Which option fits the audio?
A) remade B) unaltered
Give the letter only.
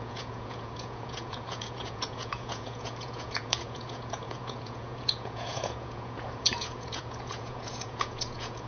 A